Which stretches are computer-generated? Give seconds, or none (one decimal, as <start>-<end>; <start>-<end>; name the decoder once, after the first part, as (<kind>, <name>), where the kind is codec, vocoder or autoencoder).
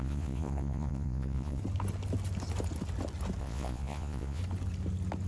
0.0-1.6 (vocoder, Vocos); 3.4-4.4